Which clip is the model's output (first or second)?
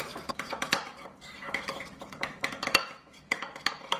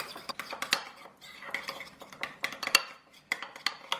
first